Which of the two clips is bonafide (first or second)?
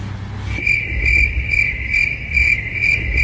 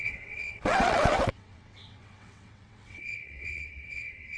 first